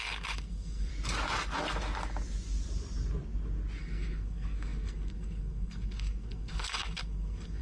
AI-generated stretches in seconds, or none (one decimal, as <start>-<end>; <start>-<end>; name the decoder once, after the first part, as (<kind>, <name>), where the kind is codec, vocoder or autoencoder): 0.0-0.9 (codec, SNAC); 3.8-7.6